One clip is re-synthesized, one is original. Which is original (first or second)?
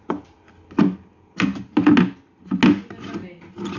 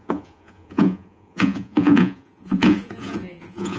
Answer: first